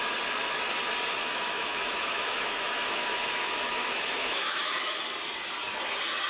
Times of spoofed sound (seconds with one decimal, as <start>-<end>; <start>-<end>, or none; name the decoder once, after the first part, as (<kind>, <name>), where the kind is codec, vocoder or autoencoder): 1.2-5.0 (autoencoder, DAC-VAE)